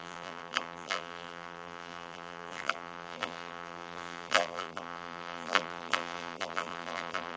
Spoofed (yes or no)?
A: yes